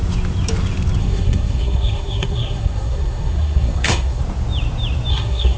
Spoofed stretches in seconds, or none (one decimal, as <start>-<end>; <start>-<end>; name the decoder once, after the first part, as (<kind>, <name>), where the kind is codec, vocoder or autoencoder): 1.0-4.2 (codec, SNAC); 5.1-5.6